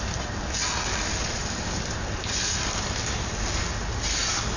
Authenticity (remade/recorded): recorded